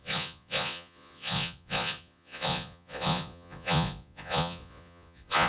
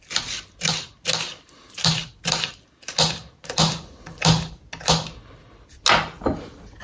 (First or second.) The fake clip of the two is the first